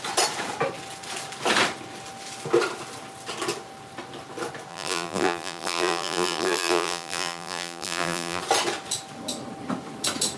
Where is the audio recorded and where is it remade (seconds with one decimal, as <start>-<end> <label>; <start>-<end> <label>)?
0.0-4.7 recorded; 4.7-8.4 remade; 8.4-10.4 recorded